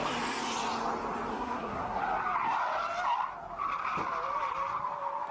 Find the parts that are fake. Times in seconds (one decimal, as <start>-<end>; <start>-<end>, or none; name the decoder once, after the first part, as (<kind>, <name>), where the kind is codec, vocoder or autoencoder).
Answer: 1.3-2.0 (codec, SNAC)